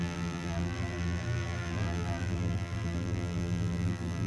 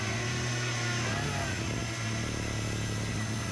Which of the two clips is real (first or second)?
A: second